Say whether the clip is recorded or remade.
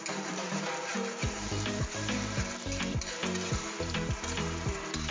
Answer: remade